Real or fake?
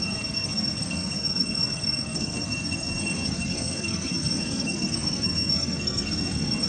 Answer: fake